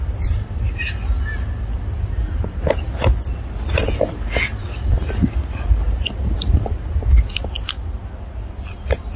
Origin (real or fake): real